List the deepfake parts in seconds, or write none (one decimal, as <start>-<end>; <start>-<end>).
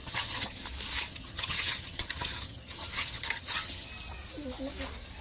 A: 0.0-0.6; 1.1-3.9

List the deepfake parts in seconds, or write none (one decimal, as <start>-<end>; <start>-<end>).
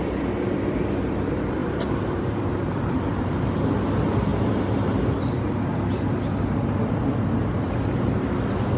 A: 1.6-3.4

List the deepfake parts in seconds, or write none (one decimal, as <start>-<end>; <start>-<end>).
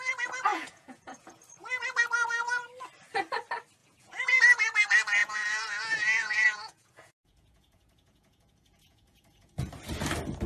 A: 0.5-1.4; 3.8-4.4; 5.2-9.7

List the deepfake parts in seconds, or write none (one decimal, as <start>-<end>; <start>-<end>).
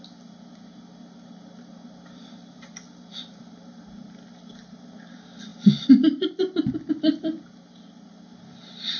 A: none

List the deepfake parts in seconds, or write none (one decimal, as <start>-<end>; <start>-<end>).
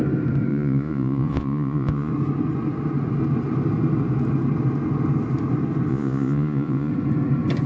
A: 0.5-2.1; 5.9-6.9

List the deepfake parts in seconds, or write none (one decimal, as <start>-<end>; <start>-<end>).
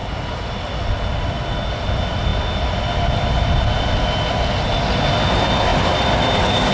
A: 0.0-0.8; 5.7-6.7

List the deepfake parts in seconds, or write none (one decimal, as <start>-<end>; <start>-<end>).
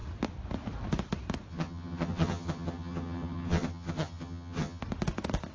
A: 1.5-4.8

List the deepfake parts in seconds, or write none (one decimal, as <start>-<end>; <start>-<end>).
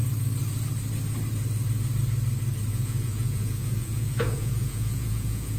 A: 2.7-5.6